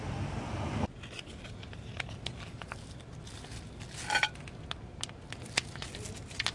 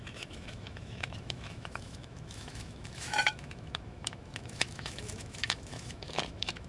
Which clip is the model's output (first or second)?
second